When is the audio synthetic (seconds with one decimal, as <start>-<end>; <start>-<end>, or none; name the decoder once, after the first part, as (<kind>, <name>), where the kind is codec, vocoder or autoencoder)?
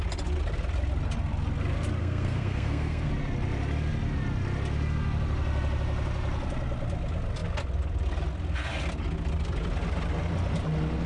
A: 2.0-3.1 (codec, SNAC)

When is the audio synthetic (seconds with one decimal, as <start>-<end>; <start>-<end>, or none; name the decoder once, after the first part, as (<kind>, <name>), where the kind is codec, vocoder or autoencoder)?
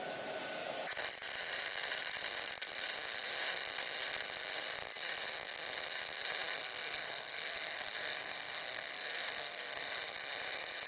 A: 6.6-10.0 (codec, SNAC)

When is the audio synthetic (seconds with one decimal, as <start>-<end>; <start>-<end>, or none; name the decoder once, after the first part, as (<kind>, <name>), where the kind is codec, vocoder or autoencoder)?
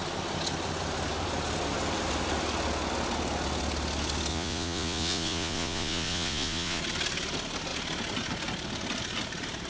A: 4.3-6.8 (vocoder, Vocos)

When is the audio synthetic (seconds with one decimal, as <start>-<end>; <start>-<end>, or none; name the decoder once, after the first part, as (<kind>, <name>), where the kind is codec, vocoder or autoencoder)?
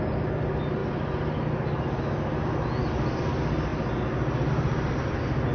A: 2.8-3.3 (vocoder, BigVGAN v2)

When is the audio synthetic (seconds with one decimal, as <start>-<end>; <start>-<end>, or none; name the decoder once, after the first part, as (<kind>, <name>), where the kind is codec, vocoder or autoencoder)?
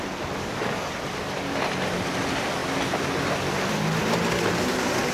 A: 0.4-0.9 (codec, DAC)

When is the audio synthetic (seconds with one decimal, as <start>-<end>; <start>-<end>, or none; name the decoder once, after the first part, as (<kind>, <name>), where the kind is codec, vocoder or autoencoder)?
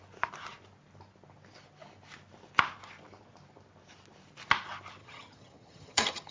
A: 5.0-6.3 (vocoder, HiFi-GAN)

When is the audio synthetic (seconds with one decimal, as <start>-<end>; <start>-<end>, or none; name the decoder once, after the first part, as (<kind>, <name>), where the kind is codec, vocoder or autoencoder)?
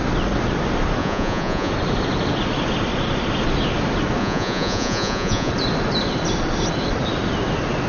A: 1.0-1.7 (vocoder, Vocos); 4.2-5.5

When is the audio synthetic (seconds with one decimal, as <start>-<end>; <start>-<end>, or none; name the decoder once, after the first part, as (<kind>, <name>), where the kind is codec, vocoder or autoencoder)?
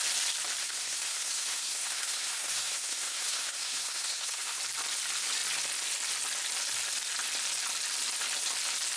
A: 0.6-4.6 (codec, SNAC)